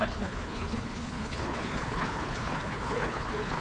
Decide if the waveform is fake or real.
fake